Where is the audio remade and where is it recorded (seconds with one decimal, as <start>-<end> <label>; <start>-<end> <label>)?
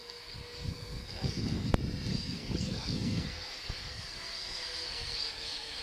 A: 0.0-1.7 remade; 1.7-2.1 recorded; 2.1-5.8 remade